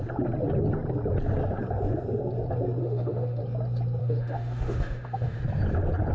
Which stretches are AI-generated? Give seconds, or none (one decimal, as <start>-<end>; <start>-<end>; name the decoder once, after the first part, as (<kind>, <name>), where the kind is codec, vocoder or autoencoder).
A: 2.8-3.4 (autoencoder, DAC-VAE); 4.0-5.4